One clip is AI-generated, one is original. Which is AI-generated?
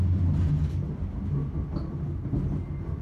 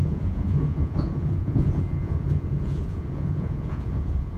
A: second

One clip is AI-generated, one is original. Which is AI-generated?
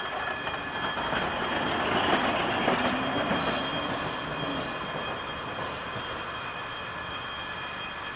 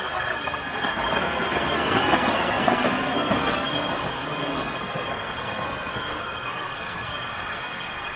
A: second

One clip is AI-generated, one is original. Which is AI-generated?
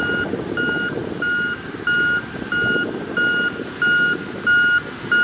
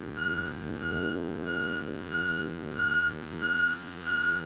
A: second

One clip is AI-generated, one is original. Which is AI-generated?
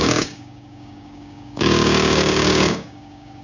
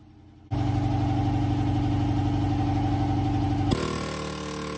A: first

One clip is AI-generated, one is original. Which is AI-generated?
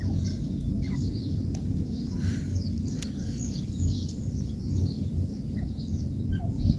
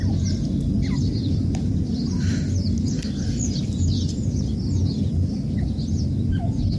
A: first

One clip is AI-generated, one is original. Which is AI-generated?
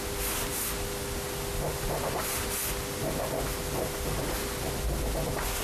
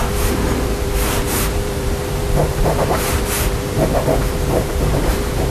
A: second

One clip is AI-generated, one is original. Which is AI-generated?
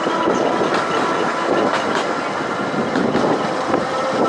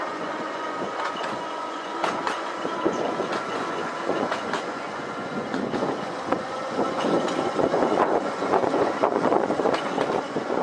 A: second